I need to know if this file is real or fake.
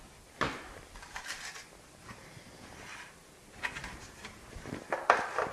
fake